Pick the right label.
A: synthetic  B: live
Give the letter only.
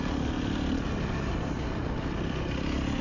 B